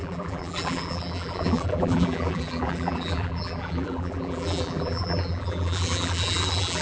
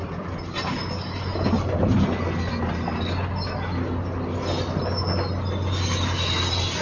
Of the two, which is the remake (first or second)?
first